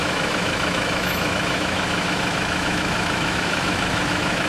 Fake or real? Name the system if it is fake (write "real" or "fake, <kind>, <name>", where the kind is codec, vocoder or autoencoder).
fake, autoencoder, DAC-VAE